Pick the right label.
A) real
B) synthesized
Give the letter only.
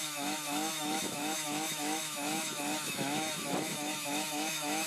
B